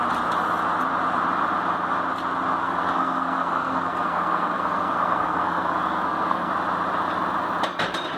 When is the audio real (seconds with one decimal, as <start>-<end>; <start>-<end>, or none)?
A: 0.0-2.6; 6.5-8.2